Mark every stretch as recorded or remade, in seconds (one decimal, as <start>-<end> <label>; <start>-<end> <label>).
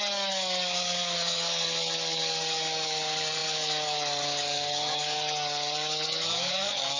0.0-7.0 remade